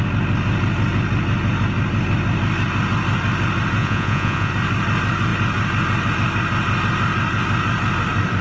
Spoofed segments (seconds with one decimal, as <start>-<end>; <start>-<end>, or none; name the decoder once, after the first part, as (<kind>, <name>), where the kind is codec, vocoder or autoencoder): 3.8-4.5 (vocoder, Vocos)